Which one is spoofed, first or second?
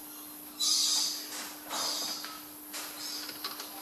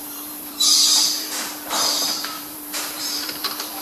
second